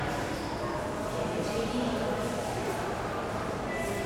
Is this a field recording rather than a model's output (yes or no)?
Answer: yes